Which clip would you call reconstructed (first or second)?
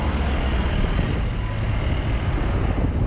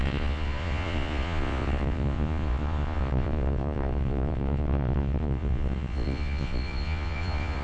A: second